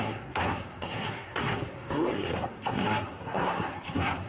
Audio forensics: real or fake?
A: fake